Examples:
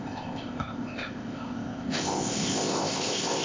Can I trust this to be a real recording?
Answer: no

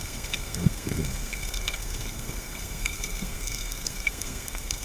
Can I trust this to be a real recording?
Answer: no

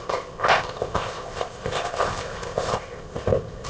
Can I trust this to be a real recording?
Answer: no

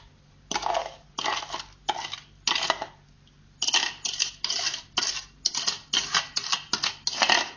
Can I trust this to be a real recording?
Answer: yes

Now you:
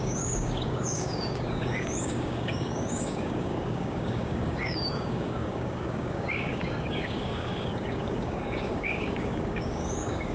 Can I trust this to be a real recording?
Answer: no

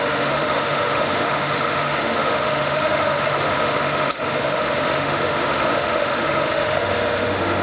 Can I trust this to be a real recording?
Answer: no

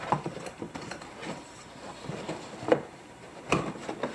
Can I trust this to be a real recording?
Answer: no